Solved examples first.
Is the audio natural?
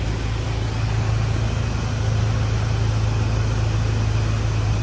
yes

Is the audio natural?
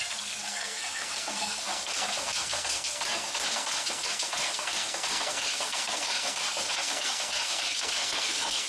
no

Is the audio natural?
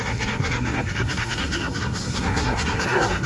no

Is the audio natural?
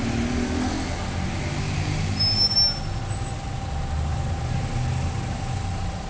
yes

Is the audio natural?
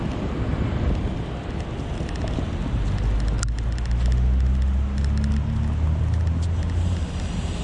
yes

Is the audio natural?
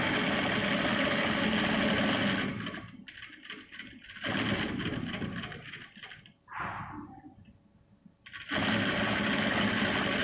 yes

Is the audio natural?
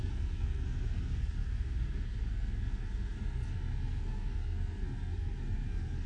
no